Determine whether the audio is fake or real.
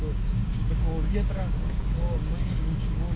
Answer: fake